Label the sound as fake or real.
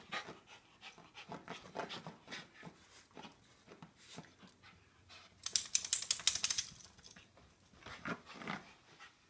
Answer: real